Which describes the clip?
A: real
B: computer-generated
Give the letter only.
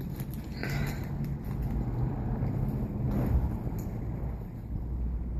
B